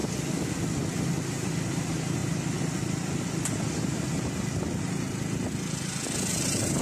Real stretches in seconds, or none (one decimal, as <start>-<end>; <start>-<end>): 0.0-1.7; 2.2-6.3